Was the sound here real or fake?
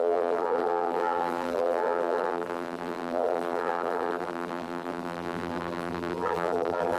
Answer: fake